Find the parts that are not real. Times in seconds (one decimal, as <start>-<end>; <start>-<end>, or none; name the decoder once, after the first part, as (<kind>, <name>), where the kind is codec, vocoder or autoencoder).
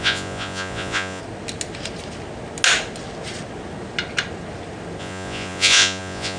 0.0-1.2 (vocoder, Vocos); 5.0-6.4